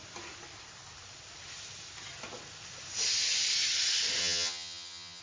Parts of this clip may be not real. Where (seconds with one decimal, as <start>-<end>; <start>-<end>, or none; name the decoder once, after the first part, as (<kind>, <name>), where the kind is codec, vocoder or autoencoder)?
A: 4.2-5.2 (vocoder, HiFi-GAN)